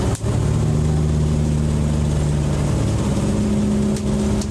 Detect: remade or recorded recorded